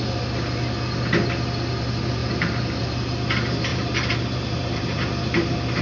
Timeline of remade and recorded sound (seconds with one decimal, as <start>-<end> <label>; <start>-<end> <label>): 0.0-2.2 recorded; 2.2-2.8 remade; 2.8-3.7 recorded; 3.7-5.8 remade